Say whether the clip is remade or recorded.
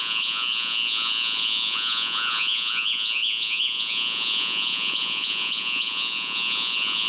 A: remade